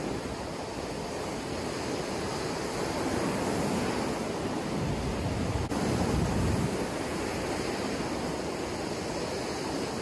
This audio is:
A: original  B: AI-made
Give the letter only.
A